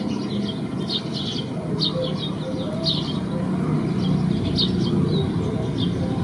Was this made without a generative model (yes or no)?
yes